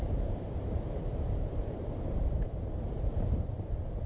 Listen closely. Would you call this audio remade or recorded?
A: remade